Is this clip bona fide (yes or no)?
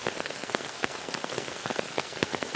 no